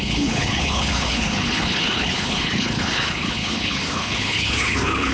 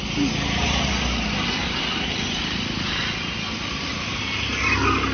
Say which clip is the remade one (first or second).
first